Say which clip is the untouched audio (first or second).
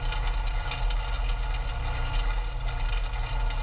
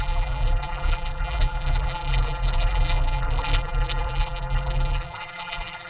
first